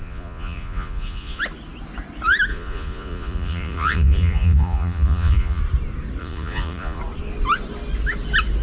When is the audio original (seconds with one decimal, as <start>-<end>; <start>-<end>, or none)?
1.4-2.5; 5.6-6.2; 7.0-8.6